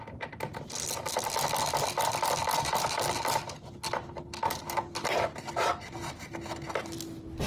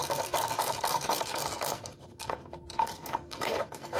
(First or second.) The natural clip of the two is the first